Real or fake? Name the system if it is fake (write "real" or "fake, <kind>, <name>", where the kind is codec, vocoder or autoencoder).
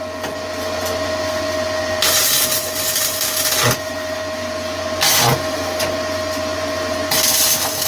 real